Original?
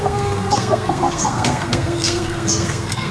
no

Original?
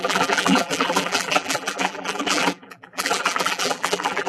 no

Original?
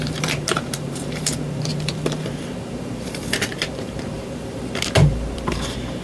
no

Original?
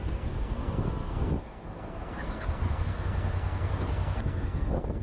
no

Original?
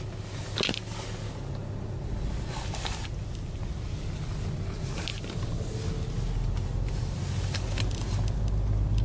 yes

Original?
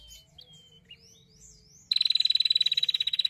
yes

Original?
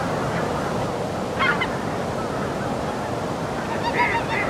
yes